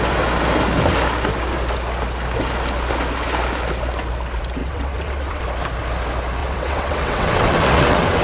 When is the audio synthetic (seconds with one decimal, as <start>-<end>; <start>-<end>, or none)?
4.6-5.4; 6.4-8.2